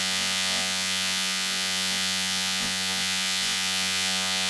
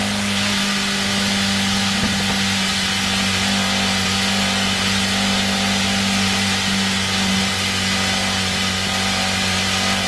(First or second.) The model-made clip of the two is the first